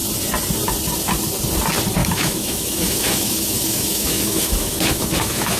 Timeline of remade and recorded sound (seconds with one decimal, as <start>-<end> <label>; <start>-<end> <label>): 0.0-2.0 recorded; 2.0-5.6 remade